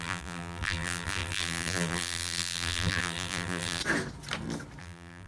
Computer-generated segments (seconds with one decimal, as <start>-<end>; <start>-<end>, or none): 0.0-3.8; 4.8-5.3